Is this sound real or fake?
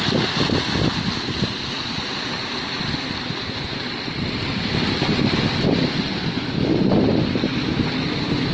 real